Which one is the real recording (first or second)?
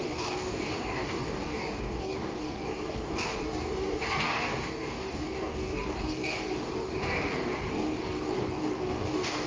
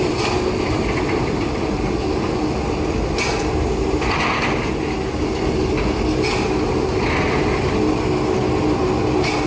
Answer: second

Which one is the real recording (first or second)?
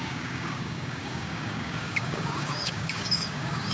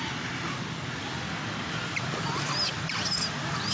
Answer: second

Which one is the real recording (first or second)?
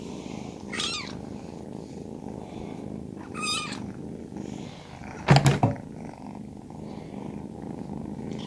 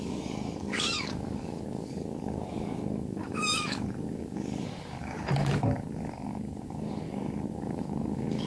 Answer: first